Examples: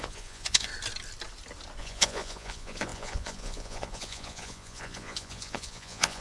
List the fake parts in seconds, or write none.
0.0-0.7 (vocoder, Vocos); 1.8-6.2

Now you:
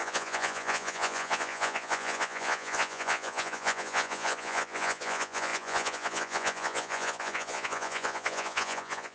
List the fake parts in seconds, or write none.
0.0-9.1 (vocoder, Vocos)

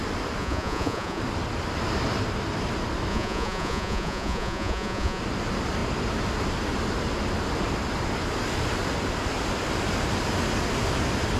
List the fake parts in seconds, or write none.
0.4-1.2 (vocoder, Vocos); 3.1-5.2

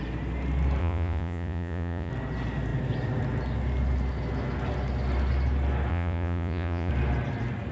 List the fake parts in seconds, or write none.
0.8-2.1 (vocoder, Vocos); 5.9-6.9